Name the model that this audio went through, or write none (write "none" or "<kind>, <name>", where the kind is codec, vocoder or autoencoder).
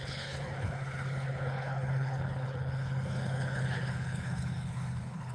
codec, HILCodec